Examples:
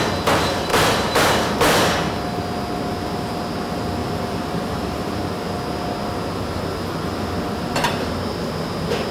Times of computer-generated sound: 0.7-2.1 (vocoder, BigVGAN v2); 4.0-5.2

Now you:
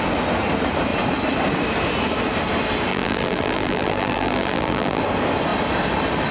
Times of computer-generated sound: 2.9-5.0 (vocoder, BigVGAN v2)